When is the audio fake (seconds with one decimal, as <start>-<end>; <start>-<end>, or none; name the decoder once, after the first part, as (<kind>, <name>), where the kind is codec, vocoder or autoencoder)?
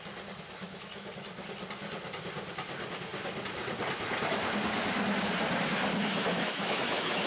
0.6-1.1 (autoencoder, DAC-VAE); 6.0-7.3